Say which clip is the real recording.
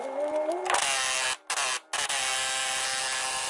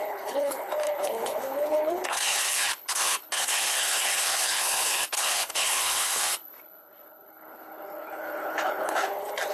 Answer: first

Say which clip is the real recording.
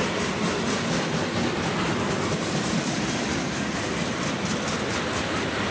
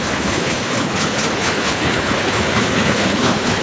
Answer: first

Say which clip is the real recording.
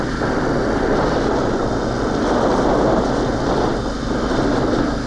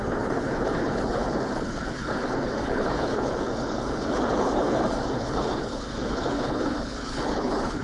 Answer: first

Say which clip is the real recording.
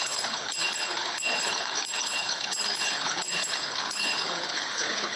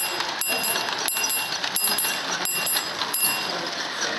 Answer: second